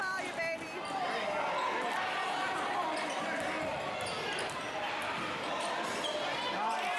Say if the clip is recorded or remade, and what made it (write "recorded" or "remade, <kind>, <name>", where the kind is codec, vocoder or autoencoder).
recorded